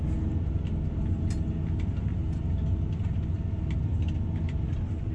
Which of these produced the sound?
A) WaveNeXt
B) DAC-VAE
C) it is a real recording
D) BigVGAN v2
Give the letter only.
C